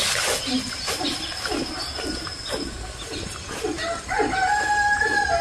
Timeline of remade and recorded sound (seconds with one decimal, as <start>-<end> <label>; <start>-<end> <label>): 0.0-5.4 recorded